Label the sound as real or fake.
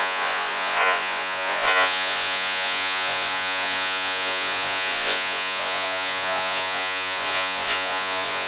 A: fake